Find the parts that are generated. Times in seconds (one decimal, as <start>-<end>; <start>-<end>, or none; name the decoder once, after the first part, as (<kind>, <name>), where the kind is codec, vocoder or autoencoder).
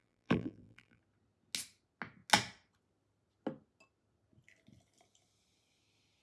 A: 0.0-1.0 (vocoder, BigVGAN v2)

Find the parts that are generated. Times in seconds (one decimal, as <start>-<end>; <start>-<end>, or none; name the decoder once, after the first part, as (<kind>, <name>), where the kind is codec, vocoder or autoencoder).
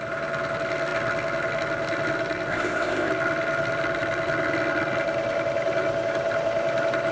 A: 2.5-3.1 (codec, ZipCodec)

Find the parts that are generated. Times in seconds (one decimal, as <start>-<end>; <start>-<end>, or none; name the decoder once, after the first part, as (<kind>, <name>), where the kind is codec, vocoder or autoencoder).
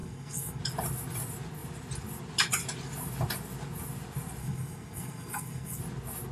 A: 0.0-0.6 (codec, SNAC); 4.4-5.8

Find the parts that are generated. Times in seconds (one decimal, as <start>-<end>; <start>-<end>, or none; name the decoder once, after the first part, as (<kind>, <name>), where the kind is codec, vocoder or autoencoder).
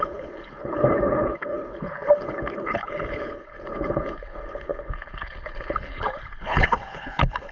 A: 0.0-7.5 (codec, HILCodec)